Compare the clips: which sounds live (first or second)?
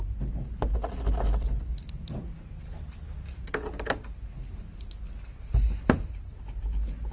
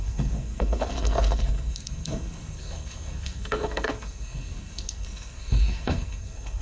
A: first